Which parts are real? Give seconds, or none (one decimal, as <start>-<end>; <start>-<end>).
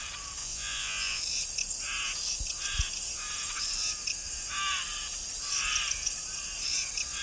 0.0-0.4; 1.2-7.2